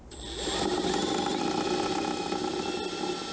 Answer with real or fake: real